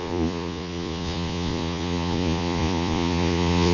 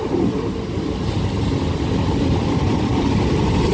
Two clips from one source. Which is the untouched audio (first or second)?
second